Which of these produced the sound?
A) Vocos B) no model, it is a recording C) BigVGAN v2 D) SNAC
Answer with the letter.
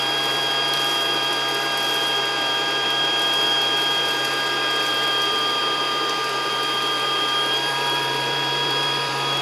C